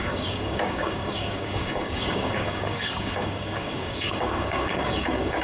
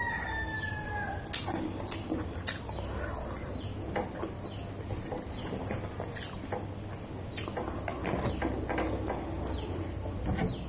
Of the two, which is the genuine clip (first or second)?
second